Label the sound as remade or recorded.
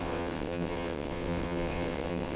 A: remade